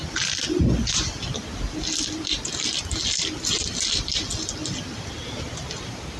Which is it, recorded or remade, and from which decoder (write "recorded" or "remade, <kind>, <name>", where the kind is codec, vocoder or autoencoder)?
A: recorded